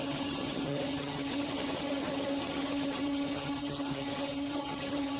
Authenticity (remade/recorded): remade